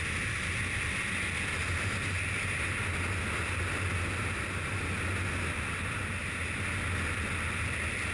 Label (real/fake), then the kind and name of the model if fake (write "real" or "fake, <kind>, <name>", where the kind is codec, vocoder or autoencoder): real